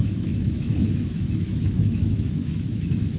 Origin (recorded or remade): remade